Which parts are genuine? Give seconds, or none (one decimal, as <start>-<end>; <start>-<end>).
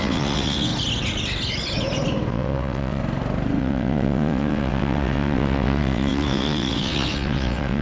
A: 0.7-2.3; 3.0-3.6